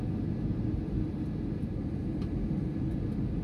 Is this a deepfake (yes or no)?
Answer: no